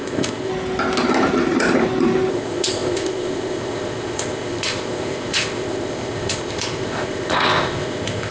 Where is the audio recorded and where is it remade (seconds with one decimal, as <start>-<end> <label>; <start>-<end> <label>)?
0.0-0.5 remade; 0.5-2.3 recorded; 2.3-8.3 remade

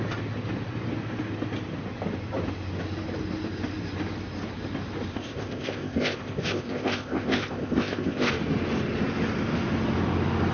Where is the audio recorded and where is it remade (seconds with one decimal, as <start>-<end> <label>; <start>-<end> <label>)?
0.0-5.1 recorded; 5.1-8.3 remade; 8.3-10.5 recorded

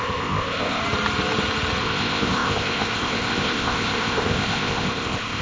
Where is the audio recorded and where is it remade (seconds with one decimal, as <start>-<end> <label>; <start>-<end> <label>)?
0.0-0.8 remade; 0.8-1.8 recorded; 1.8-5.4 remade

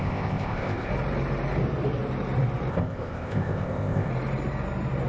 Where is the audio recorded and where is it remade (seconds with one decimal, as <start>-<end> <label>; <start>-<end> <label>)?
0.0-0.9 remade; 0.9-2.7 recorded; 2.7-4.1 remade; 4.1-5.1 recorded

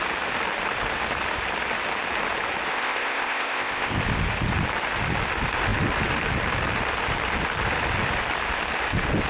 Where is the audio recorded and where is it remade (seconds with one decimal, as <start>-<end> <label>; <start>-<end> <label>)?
0.0-2.7 recorded; 2.7-4.0 remade; 4.0-9.3 recorded